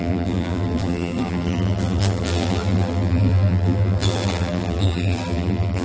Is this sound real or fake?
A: fake